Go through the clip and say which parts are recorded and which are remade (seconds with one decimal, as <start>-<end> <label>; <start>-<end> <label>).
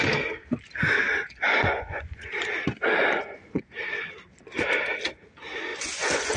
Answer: 0.0-1.0 recorded; 1.0-2.3 remade; 2.3-3.0 recorded; 3.0-3.6 remade; 3.6-5.7 recorded; 5.7-6.4 remade